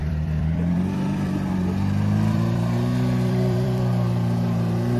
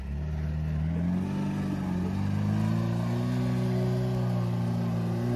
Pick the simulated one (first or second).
first